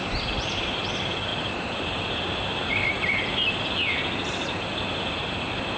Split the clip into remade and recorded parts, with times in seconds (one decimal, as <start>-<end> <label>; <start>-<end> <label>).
0.0-1.3 recorded; 1.3-4.8 remade; 4.8-5.8 recorded